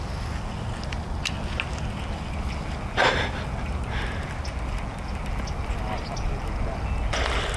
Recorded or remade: recorded